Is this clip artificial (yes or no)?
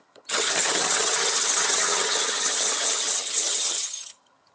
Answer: yes